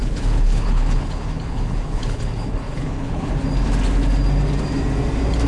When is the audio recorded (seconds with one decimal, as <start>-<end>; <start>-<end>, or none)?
3.3-5.5